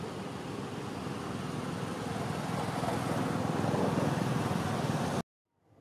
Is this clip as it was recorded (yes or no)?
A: yes